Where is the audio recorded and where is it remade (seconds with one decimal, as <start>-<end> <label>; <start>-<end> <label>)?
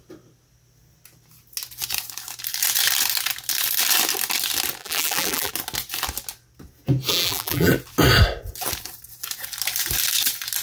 0.0-4.8 recorded; 4.8-5.5 remade; 5.5-7.1 recorded; 7.1-7.7 remade; 7.7-10.6 recorded